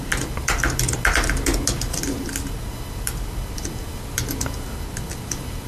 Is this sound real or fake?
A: real